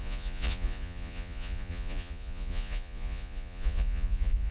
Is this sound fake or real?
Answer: fake